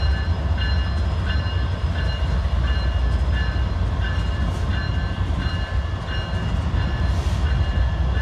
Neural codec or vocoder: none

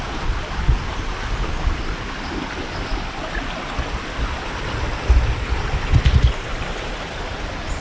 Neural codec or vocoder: none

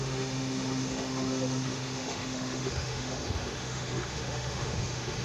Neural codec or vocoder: autoencoder, DAC-VAE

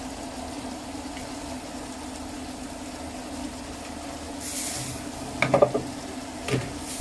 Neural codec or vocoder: none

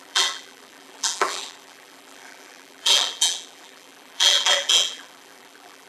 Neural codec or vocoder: vocoder, BigVGAN v2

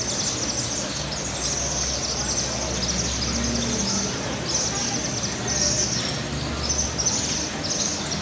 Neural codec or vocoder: none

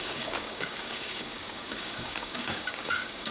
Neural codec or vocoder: codec, DAC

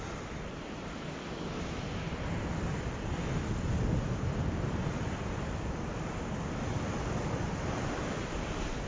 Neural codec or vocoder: none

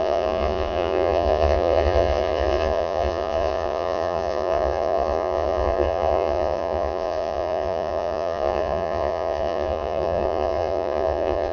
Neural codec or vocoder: vocoder, Vocos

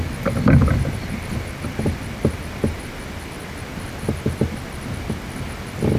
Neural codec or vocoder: none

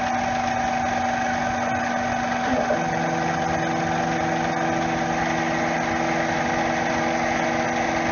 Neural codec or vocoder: none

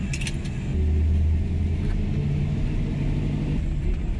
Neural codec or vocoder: none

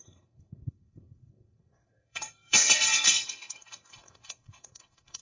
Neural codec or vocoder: codec, SNAC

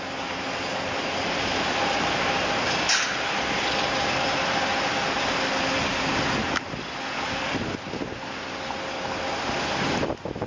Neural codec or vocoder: none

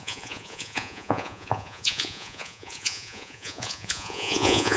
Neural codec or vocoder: vocoder, Vocos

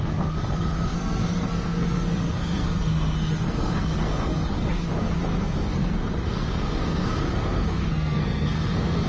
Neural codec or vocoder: codec, SNAC